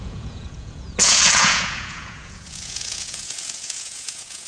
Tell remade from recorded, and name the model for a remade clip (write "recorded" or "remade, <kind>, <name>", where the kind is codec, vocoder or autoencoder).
remade, vocoder, Vocos